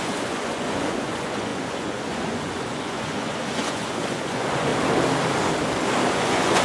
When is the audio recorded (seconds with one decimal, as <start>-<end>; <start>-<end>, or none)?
4.7-6.1